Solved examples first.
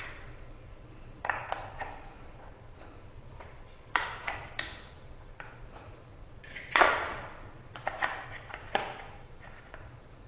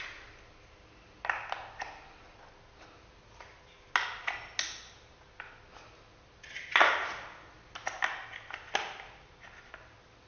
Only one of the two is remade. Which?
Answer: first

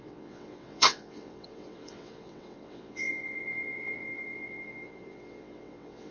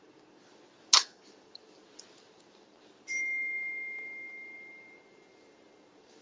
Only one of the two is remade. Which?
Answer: first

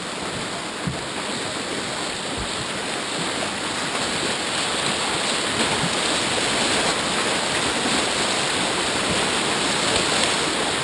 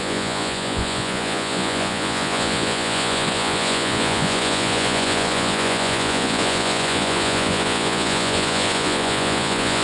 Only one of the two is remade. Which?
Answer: second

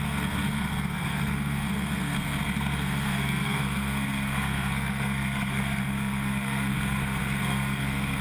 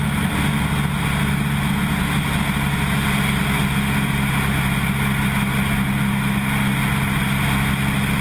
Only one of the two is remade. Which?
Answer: first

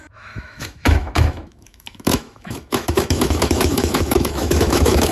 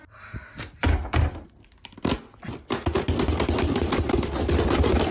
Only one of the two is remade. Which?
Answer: first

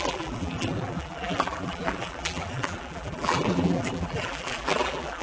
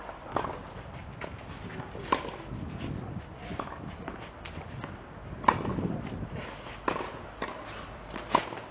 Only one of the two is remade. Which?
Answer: first